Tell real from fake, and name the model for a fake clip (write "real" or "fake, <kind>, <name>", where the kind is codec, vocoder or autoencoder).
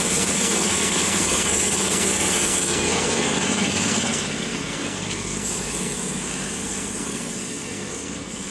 fake, codec, SNAC